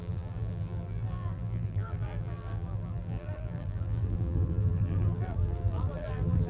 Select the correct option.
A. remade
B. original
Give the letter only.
A